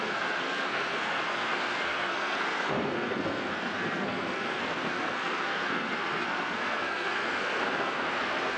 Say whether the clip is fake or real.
fake